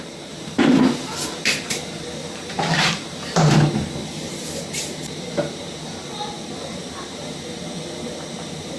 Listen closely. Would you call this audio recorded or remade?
remade